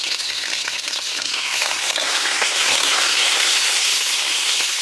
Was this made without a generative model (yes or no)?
no